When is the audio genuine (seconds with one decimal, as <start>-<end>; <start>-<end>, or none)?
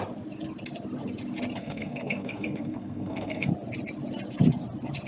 0.0-1.6; 3.5-5.1